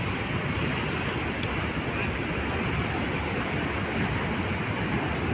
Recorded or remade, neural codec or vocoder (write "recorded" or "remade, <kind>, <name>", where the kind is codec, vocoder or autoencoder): recorded